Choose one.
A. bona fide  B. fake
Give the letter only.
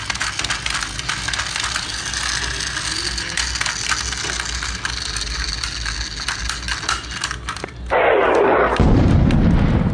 A